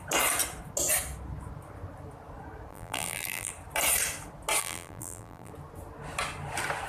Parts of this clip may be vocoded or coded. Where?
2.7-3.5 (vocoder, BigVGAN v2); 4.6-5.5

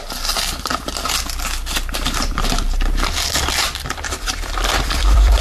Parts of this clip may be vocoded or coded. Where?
0.0-0.7 (vocoder, BigVGAN v2); 2.3-5.4

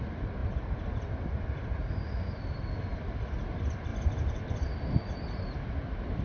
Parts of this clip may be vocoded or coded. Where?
0.0-0.4 (vocoder, BigVGAN v2); 1.3-1.8; 3.4-3.9; 5.1-6.2

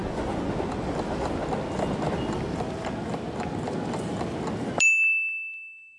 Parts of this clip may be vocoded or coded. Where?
0.0-0.5 (vocoder, Vocos)

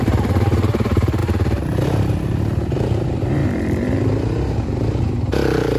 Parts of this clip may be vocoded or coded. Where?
0.0-1.2 (vocoder, BigVGAN v2); 3.0-5.8

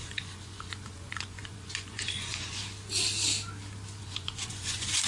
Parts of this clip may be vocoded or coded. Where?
0.0-2.6 (vocoder, Vocos); 4.0-5.1

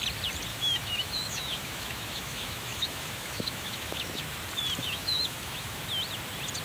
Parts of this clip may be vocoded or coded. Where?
0.5-4.2 (autoencoder, DAC-VAE); 4.8-5.8